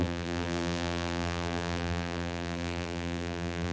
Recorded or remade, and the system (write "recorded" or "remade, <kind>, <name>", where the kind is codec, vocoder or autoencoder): remade, vocoder, BigVGAN v2